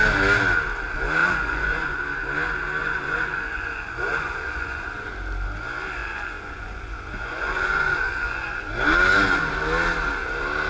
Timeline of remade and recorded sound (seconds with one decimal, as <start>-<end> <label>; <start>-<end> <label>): 0.0-1.2 recorded; 1.2-2.0 remade; 2.0-2.8 recorded; 2.8-5.1 remade; 5.1-6.0 recorded; 6.0-8.7 remade; 8.7-10.7 recorded